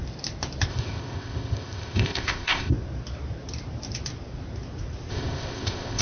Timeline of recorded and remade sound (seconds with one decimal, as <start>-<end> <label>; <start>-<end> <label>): 0.0-0.7 recorded; 0.7-2.7 remade; 2.7-5.1 recorded; 5.1-6.0 remade